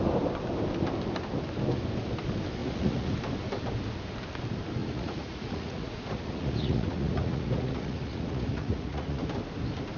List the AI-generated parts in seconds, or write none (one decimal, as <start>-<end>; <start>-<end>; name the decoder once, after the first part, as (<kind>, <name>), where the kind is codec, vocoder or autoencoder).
2.6-3.1 (vocoder, Vocos); 4.8-9.2